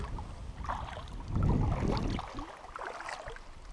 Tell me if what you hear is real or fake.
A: real